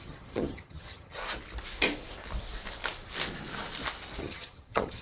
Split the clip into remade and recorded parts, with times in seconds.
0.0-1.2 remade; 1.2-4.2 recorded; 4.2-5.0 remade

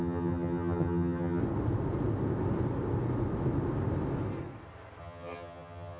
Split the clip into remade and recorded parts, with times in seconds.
0.0-1.4 remade; 1.4-5.0 recorded; 5.0-6.0 remade